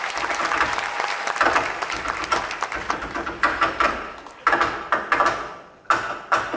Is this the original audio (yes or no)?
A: yes